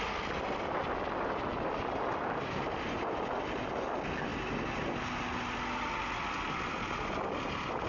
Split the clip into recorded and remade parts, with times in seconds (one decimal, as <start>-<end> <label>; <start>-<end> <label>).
0.0-7.9 recorded